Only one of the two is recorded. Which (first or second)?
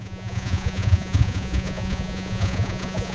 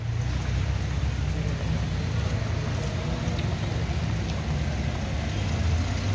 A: second